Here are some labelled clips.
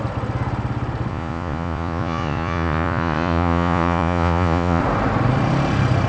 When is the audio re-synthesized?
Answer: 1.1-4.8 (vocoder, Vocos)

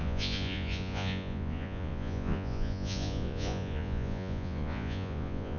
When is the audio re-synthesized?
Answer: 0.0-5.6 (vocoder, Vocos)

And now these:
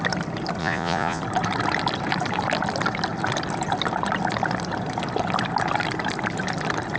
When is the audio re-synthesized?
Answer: 0.6-1.2 (vocoder, Vocos)

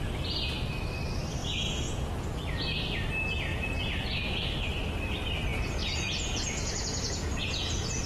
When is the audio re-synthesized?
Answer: 1.4-2.2 (vocoder, Vocos); 3.5-4.1; 5.5-8.1

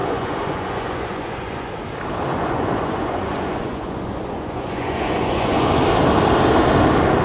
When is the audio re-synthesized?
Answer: 0.0-1.7 (vocoder, Vocos); 2.3-5.8

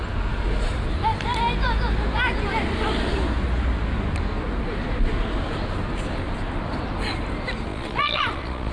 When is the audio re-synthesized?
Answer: 7.7-8.7 (vocoder, Vocos)

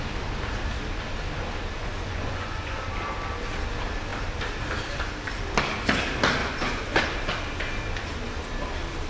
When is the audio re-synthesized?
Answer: 1.8-2.8 (vocoder, Vocos); 6.4-7.0